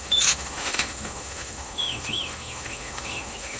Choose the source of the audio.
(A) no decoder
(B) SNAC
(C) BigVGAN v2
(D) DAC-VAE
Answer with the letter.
D